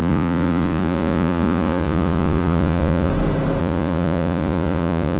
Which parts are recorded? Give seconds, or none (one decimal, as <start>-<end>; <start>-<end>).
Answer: 3.1-3.6